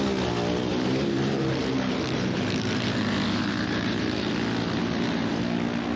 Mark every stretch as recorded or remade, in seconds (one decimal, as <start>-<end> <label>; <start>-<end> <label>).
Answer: 0.0-0.7 recorded; 0.7-4.3 remade; 4.3-4.8 recorded; 4.8-5.4 remade; 5.4-6.0 recorded